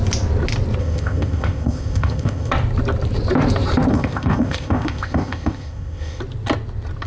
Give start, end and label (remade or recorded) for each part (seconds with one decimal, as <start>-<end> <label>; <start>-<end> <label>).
0.0-0.8 recorded; 0.8-2.5 remade; 2.5-3.9 recorded; 3.9-6.2 remade; 6.2-7.1 recorded